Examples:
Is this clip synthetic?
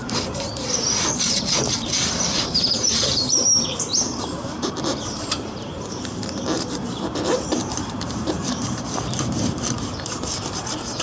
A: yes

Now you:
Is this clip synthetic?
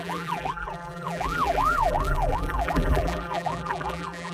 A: yes